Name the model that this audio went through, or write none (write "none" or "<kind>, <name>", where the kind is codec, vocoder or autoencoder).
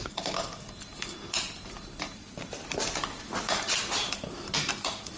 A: vocoder, BigVGAN v2